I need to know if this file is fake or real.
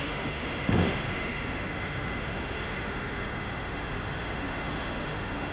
fake